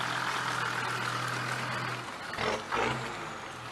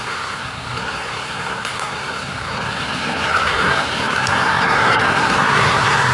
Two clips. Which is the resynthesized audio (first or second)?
second